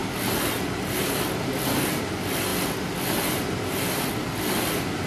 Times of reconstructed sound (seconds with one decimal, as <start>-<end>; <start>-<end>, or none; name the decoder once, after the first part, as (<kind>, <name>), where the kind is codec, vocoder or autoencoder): none